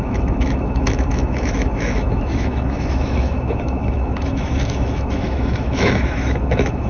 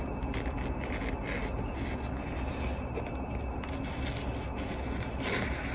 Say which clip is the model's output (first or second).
first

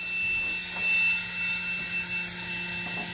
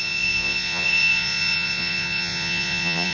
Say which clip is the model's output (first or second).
second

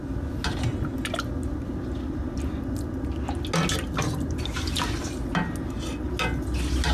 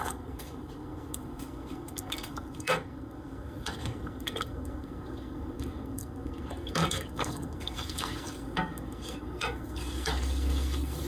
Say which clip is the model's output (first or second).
second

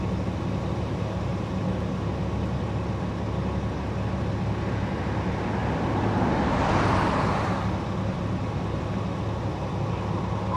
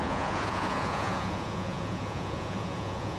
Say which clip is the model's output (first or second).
second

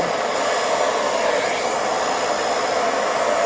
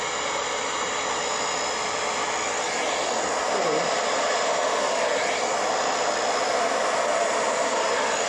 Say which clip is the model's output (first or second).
second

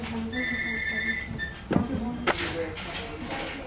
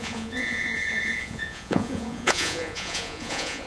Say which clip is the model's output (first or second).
second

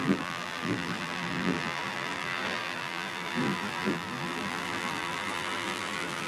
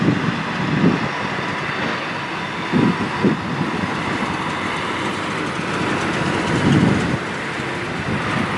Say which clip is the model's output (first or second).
first